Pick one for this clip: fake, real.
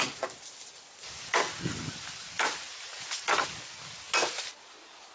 real